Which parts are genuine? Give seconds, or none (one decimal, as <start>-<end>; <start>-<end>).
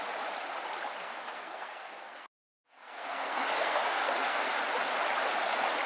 0.0-1.0; 4.5-5.9